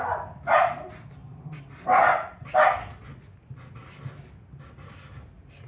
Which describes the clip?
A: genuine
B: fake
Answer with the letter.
A